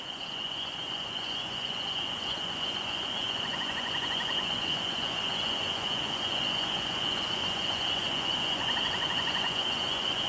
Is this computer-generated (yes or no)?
yes